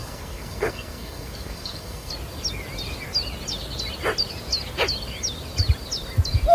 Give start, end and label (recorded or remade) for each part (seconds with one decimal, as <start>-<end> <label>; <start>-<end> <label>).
0.0-2.1 remade; 2.1-6.5 recorded